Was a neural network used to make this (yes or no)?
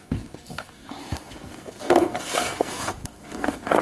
yes